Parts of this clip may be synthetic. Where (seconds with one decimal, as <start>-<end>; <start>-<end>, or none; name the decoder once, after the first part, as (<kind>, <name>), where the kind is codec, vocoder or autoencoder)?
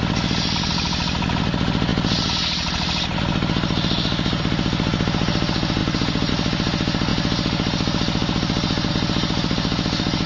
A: none